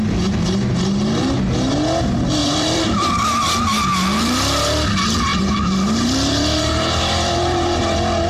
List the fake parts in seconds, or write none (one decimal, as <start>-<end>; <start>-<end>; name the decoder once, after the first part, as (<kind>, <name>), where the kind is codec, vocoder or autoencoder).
2.4-3.1 (vocoder, BigVGAN v2); 5.3-7.8